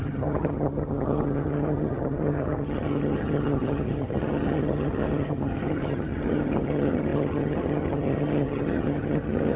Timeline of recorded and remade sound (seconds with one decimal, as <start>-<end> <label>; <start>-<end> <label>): 0.0-9.6 remade